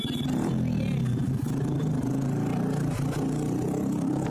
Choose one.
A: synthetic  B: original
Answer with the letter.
B